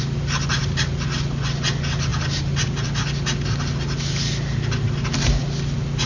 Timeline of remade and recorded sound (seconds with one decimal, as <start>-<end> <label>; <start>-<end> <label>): 0.0-6.1 recorded